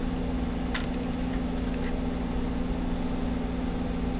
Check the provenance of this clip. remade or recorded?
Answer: recorded